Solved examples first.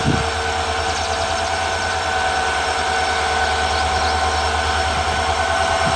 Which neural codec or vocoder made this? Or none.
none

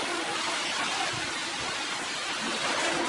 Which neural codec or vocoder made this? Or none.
none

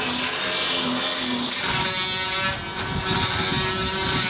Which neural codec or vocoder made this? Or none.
none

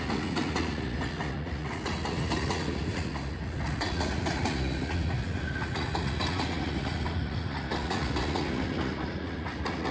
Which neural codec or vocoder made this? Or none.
vocoder, Vocos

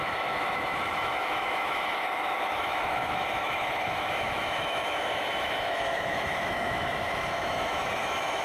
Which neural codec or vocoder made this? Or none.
autoencoder, DAC-VAE